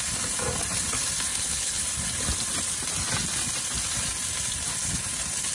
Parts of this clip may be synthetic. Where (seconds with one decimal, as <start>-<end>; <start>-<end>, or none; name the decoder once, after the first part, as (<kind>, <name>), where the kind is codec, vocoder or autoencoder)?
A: 1.3-1.8 (codec, HILCodec)